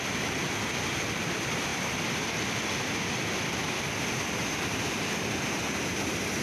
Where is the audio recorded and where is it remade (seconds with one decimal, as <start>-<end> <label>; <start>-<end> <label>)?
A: 0.0-6.4 recorded